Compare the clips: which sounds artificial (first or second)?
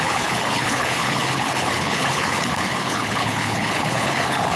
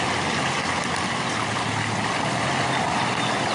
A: first